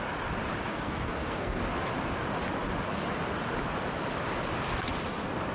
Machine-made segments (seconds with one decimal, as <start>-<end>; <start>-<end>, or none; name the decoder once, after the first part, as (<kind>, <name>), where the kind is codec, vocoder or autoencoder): 0.7-1.6 (codec, SNAC)